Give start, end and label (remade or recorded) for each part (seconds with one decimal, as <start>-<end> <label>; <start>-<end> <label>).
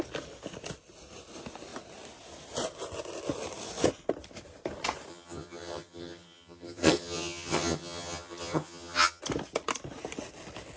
0.0-5.1 recorded; 5.1-9.2 remade; 9.2-10.8 recorded